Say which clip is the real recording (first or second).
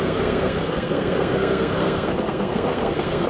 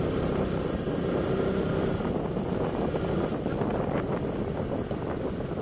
second